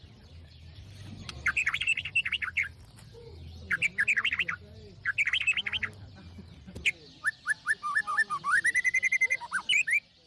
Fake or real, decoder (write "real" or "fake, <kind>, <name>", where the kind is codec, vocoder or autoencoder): real